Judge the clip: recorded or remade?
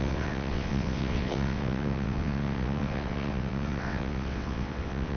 remade